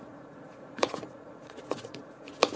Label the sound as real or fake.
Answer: fake